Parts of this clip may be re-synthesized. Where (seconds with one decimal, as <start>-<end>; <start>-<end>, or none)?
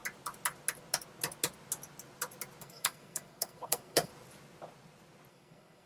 2.6-4.1; 5.3-5.9